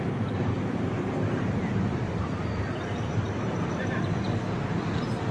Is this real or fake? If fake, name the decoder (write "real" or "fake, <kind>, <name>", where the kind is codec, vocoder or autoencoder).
fake, vocoder, BigVGAN v2